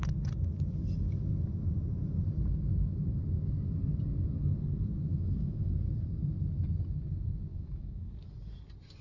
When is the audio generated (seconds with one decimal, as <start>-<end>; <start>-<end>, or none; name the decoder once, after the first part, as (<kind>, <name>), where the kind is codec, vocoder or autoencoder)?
5.1-5.7 (autoencoder, DAC-VAE); 7.5-8.1